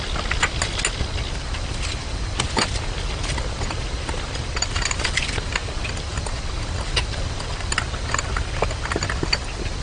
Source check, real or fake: real